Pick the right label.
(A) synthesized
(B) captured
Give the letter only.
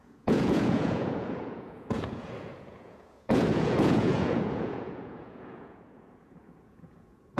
A